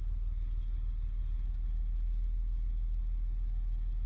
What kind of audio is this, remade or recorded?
recorded